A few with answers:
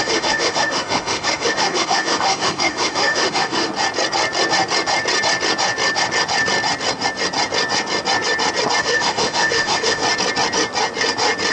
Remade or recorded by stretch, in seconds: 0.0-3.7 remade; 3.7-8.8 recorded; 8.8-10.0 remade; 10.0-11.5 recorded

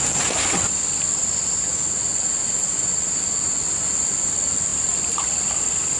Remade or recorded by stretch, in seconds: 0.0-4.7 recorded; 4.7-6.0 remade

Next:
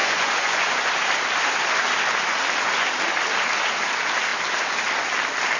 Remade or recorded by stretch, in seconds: 0.0-0.9 remade; 0.9-5.6 recorded